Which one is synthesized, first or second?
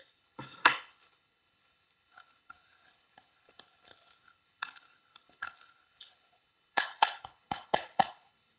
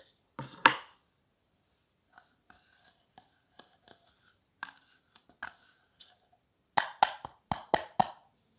first